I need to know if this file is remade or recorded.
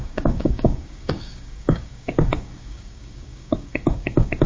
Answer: remade